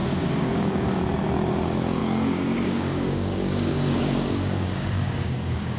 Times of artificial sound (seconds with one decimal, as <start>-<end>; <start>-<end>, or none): 0.0-1.0; 2.0-5.8